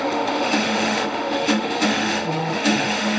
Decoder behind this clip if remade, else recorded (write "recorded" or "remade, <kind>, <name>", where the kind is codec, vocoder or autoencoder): remade, autoencoder, DAC-VAE